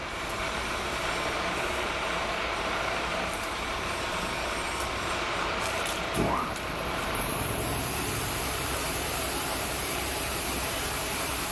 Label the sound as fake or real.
fake